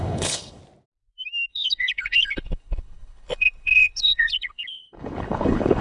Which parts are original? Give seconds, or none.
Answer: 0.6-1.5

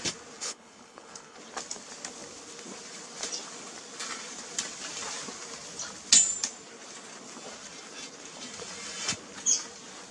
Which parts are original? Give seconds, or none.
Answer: 0.0-0.4; 1.4-10.1

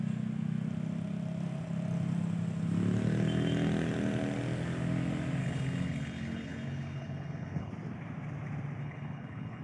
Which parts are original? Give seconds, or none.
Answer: 0.0-5.4; 7.7-8.8